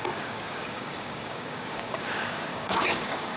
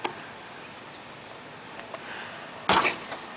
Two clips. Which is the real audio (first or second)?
second